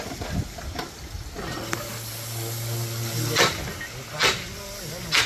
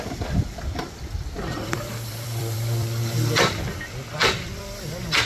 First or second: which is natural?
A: first